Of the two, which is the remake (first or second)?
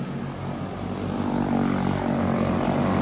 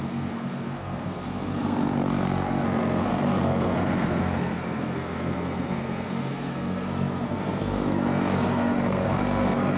second